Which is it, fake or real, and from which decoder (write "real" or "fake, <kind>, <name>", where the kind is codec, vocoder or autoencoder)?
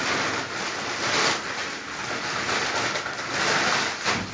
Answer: real